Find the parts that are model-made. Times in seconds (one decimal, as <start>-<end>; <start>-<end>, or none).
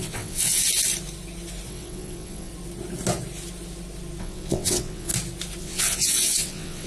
0.0-0.6; 1.7-2.5; 4.2-5.1; 5.6-6.9